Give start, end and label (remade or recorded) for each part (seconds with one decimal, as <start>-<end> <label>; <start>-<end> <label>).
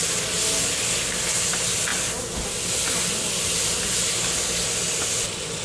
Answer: 0.0-5.6 recorded